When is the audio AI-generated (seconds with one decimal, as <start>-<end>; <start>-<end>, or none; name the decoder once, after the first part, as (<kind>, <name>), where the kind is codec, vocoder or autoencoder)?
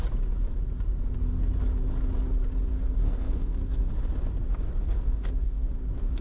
2.7-3.9 (codec, SNAC); 4.8-5.7